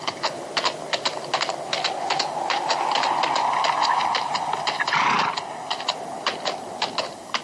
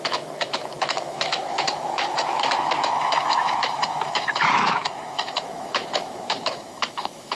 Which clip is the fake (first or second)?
second